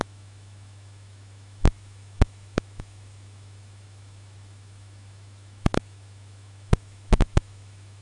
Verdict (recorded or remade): remade